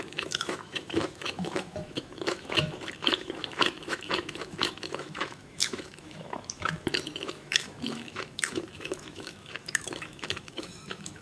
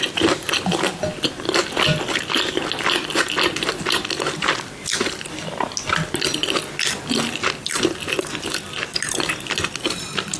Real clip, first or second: second